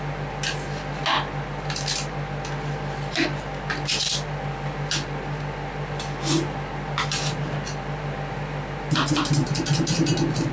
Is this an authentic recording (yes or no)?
yes